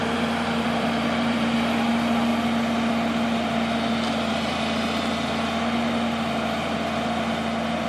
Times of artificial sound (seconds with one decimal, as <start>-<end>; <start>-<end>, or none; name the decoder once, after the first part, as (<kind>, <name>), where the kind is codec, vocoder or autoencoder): 0.0-1.9 (vocoder, BigVGAN v2)